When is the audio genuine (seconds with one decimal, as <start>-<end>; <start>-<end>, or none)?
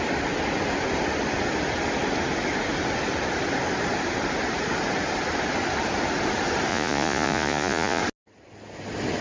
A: 0.0-6.7; 8.0-9.2